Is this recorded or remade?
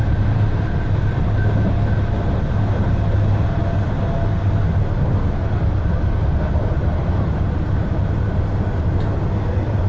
recorded